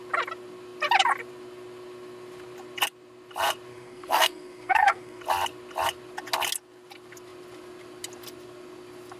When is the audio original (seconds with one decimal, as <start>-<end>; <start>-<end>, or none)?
0.0-3.7; 5.2-9.2